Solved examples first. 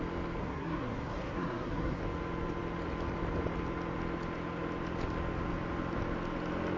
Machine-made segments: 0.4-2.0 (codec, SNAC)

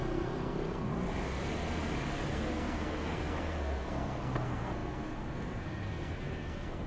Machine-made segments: 0.0-0.9 (codec, SNAC); 2.3-6.9

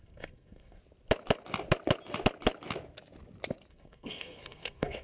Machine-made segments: 0.0-0.8 (codec, SNAC); 3.7-5.0